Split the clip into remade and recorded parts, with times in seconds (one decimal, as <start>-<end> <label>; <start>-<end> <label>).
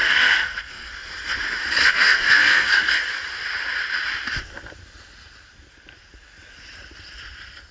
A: 0.0-0.9 remade; 0.9-1.8 recorded; 1.8-2.9 remade; 2.9-7.7 recorded